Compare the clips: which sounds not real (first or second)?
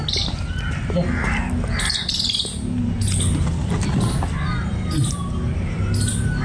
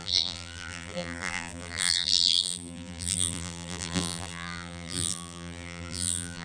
second